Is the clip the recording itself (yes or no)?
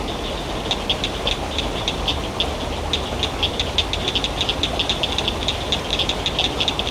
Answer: yes